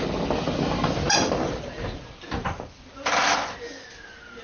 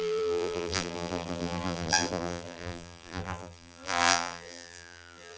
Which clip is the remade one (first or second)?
second